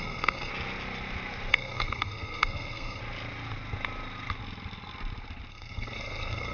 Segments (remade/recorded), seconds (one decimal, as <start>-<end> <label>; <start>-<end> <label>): 0.0-0.5 remade; 0.5-1.5 recorded; 1.5-3.0 remade; 3.0-5.5 recorded; 5.5-6.5 remade